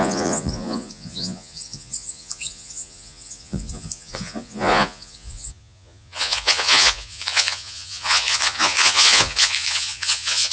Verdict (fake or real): fake